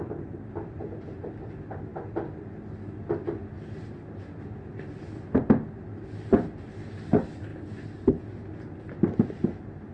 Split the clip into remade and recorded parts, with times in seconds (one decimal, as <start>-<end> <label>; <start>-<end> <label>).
0.0-9.9 recorded